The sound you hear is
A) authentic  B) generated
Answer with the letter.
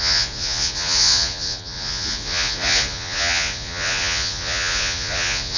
B